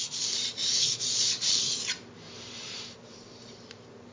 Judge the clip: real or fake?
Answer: fake